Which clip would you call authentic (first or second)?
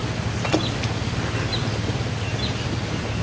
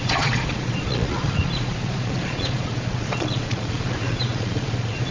first